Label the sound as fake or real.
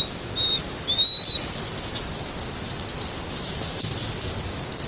real